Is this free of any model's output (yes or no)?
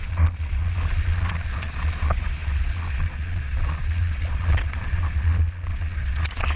no